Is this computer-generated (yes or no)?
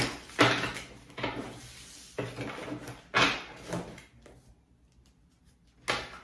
no